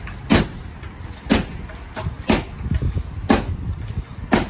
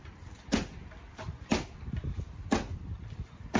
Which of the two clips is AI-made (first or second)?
second